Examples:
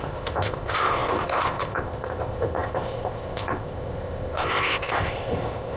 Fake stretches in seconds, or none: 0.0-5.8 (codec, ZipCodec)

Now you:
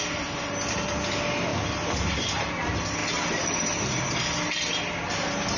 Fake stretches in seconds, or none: none